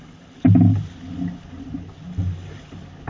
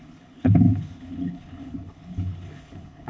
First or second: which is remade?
second